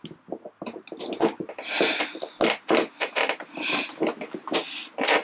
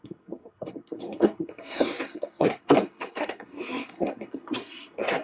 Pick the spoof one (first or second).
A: second